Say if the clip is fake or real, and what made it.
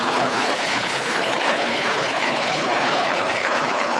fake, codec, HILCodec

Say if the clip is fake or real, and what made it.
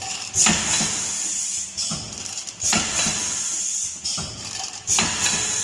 real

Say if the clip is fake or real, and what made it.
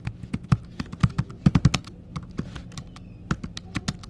real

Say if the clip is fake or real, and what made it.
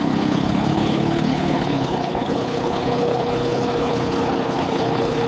fake, codec, HILCodec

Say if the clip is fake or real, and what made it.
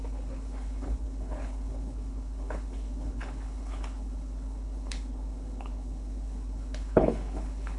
fake, codec, HILCodec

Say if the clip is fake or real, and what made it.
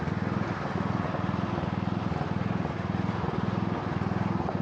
real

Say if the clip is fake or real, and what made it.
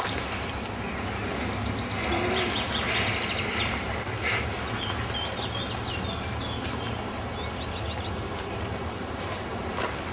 real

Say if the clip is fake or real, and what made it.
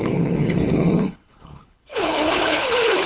fake, codec, HILCodec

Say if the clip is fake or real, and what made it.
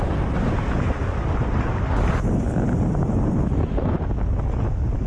real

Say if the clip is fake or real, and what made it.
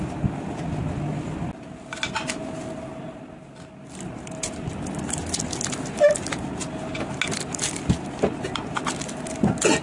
real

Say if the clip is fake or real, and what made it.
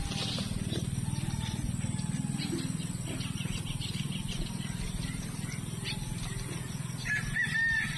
real